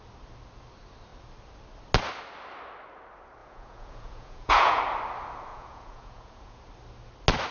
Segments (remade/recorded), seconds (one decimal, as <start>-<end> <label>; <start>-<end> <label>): 0.0-3.4 recorded; 3.4-4.8 remade; 4.8-5.5 recorded; 5.5-6.6 remade; 6.6-7.5 recorded